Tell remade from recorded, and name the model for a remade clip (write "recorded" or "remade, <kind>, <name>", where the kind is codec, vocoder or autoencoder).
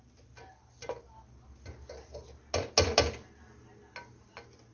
recorded